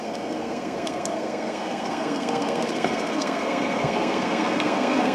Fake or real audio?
fake